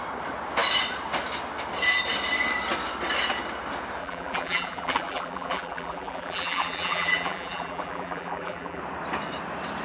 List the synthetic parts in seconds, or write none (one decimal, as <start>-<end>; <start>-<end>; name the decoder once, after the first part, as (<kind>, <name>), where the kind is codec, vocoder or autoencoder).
4.0-8.8 (vocoder, BigVGAN v2)